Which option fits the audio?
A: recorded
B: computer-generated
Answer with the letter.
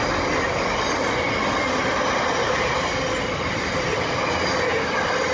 A